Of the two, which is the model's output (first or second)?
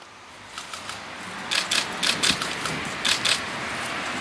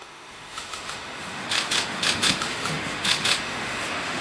second